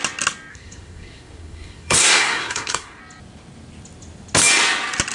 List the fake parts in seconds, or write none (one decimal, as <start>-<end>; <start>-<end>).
0.5-3.0